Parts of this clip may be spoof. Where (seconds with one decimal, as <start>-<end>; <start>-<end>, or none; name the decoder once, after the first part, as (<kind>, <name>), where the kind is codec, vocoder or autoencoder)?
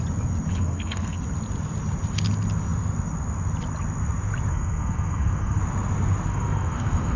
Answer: 0.5-1.2 (codec, SNAC); 4.5-5.6; 6.3-7.2